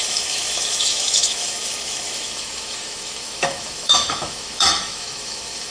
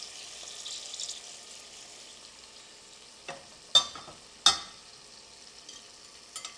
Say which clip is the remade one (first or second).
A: first